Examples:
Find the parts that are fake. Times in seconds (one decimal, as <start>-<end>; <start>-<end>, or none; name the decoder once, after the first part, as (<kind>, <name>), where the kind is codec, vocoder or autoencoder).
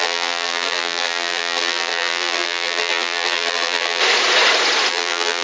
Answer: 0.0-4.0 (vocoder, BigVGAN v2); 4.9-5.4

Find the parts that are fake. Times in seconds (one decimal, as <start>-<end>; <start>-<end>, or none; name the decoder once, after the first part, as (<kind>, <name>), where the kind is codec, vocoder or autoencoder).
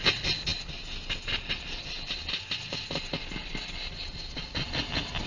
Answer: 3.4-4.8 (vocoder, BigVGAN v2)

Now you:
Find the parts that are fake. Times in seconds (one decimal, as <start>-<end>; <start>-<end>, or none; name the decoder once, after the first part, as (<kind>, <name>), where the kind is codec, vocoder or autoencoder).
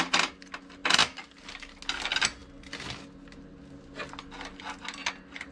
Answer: none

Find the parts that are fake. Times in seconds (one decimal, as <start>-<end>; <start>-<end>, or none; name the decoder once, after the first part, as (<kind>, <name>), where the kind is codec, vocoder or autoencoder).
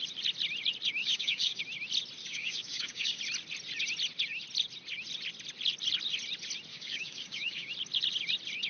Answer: 1.0-1.6 (codec, DAC); 2.2-3.2; 6.7-7.7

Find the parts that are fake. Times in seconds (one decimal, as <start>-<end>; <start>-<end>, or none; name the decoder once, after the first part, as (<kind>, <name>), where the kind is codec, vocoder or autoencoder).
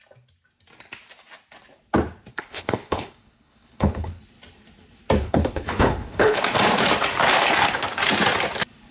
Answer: 2.3-4.2 (codec, HILCodec); 5.2-6.4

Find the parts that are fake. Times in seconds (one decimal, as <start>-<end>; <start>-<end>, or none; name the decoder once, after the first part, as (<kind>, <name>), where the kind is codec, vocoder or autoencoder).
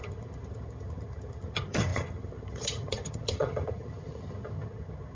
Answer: 0.0-5.2 (vocoder, HiFi-GAN)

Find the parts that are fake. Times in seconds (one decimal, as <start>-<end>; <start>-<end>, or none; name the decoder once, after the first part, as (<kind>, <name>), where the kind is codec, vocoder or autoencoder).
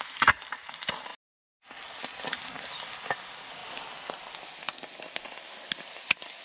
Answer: none